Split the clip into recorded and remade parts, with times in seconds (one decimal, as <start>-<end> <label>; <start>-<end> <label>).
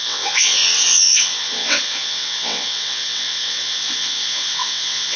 0.0-5.2 remade